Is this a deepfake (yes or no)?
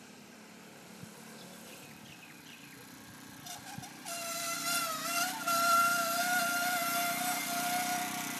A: yes